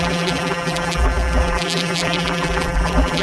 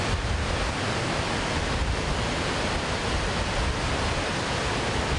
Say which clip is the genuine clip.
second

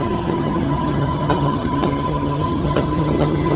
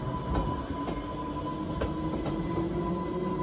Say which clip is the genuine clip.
second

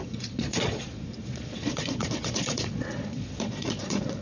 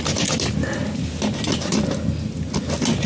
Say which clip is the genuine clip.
second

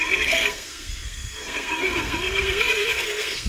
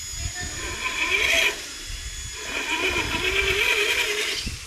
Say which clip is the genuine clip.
second